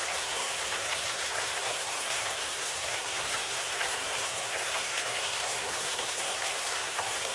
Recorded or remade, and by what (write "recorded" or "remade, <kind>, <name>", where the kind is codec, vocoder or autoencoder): remade, codec, SNAC